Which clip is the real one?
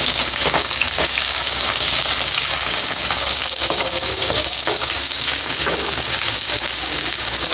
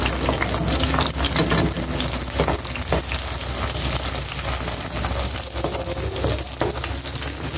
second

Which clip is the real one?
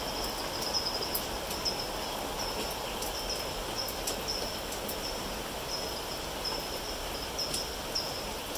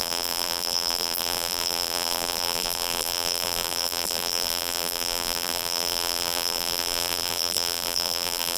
first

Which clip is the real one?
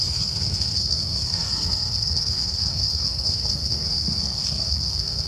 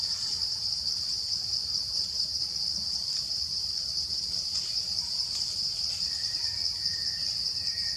second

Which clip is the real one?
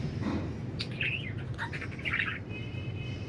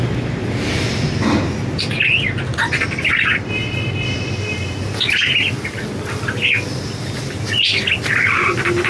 second